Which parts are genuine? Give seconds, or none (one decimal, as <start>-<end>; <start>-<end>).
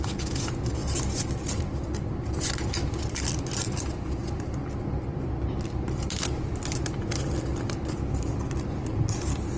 0.0-9.6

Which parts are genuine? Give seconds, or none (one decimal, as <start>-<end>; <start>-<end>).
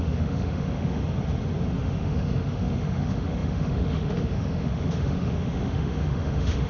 1.0-1.8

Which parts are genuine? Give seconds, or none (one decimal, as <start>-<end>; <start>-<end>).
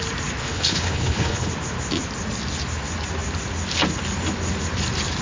0.0-0.4; 1.5-5.2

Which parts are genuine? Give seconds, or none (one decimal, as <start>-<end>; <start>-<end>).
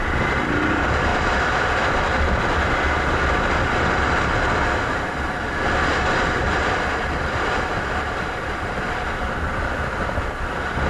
0.0-1.1; 2.2-5.9; 8.7-10.9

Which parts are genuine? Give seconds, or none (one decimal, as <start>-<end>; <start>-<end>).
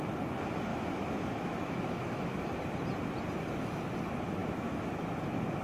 0.0-0.7; 2.5-4.4; 5.1-5.6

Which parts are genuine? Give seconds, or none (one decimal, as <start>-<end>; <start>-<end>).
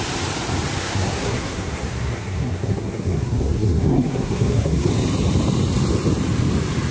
0.0-0.8; 4.9-6.9